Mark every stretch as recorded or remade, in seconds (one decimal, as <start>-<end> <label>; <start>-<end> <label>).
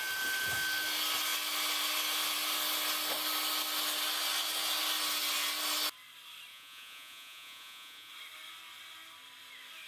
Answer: 0.0-6.5 recorded; 6.5-8.1 remade; 8.1-9.9 recorded